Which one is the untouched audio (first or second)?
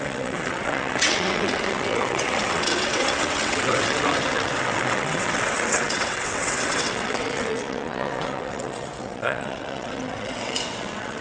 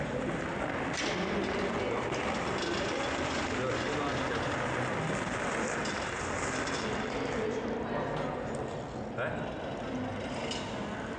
second